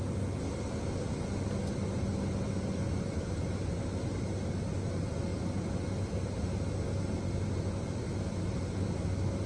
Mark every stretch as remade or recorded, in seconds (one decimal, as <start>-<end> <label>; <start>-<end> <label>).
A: 0.0-9.5 recorded